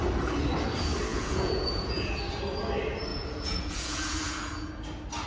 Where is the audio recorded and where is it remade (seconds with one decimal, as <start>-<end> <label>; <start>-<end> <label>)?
0.0-1.1 recorded; 1.1-2.2 remade; 2.2-3.1 recorded; 3.1-4.7 remade; 4.7-5.3 recorded